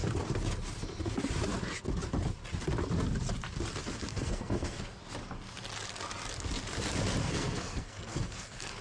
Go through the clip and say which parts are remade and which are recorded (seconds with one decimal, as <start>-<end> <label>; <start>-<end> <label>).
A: 0.0-4.1 recorded; 4.1-5.0 remade; 5.0-7.2 recorded; 7.2-8.8 remade